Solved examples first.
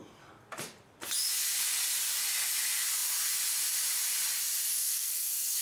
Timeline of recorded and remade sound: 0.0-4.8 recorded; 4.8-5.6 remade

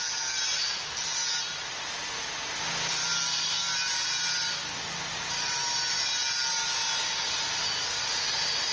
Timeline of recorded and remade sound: 0.0-8.7 recorded

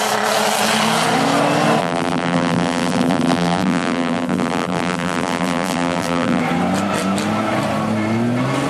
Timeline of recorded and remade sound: 0.0-1.8 recorded; 1.8-6.4 remade; 6.4-8.7 recorded

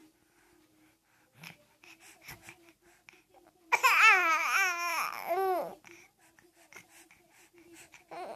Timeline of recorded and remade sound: 0.0-8.4 recorded

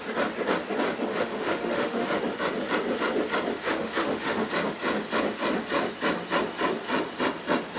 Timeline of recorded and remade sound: 0.0-1.1 recorded; 1.1-2.2 remade; 2.2-3.5 recorded; 3.5-4.5 remade; 4.5-7.8 recorded

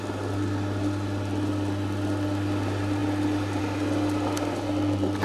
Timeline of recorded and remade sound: 0.0-5.2 recorded

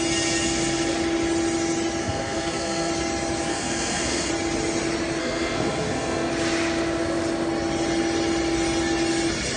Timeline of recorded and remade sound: 0.0-2.0 recorded; 2.0-2.9 remade; 2.9-3.5 recorded; 3.5-4.3 remade; 4.3-5.2 recorded; 5.2-6.3 remade; 6.3-9.6 recorded

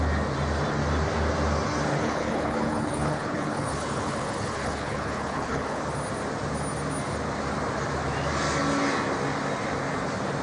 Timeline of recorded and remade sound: 0.0-1.9 recorded; 1.9-5.8 remade; 5.8-10.4 recorded